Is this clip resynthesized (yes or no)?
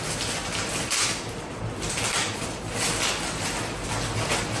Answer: no